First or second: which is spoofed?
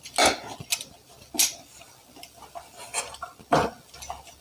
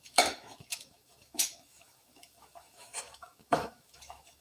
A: second